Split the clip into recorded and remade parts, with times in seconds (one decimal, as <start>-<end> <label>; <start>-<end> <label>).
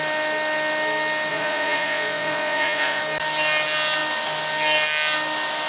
0.0-1.3 recorded; 1.3-3.0 remade; 3.0-5.7 recorded